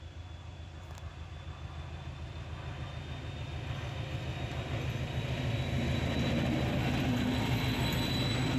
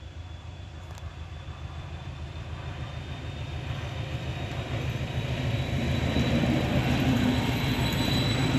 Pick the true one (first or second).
first